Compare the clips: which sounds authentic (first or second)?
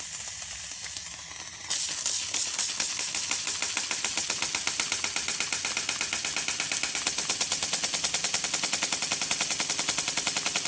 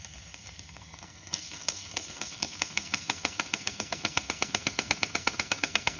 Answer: first